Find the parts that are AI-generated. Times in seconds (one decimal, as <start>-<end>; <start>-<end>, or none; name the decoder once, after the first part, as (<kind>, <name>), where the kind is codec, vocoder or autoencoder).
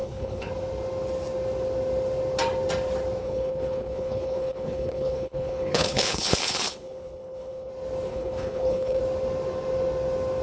0.0-0.5 (codec, HILCodec); 3.2-7.7; 8.1-9.0